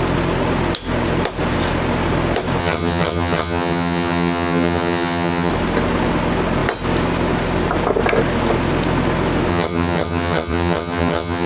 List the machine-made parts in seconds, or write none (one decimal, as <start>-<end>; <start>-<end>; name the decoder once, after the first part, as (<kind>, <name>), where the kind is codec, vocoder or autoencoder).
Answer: 2.6-5.5 (vocoder, HiFi-GAN); 9.5-11.5